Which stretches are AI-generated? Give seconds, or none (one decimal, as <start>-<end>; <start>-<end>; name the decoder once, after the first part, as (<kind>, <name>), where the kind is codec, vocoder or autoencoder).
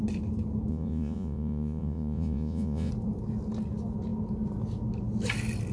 0.7-2.9 (vocoder, Vocos)